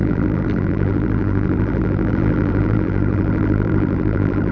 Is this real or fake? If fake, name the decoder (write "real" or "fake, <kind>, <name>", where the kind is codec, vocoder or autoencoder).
fake, vocoder, BigVGAN v2